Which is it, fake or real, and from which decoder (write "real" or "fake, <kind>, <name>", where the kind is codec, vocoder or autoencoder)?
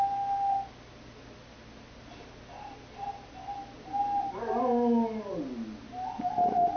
real